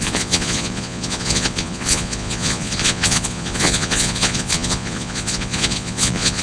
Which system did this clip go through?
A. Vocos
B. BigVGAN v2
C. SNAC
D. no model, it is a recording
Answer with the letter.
A